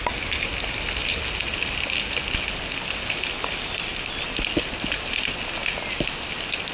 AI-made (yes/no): no